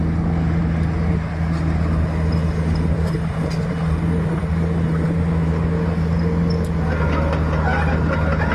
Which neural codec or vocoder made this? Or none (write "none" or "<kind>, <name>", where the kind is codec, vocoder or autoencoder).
none